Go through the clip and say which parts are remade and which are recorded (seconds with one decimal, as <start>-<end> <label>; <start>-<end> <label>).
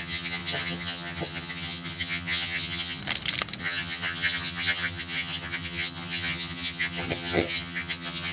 0.0-3.0 remade; 3.0-3.6 recorded; 3.6-8.3 remade